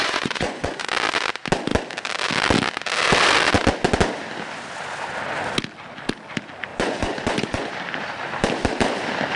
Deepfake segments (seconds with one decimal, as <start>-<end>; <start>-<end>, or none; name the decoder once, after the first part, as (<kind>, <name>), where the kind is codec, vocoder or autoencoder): 0.0-0.9 (vocoder, Vocos); 6.7-7.7